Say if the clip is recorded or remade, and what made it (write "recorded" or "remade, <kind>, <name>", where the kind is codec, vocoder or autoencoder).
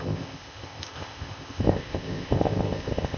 remade, codec, ZipCodec